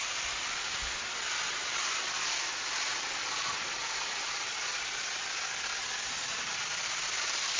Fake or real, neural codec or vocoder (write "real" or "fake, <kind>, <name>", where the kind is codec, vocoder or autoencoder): real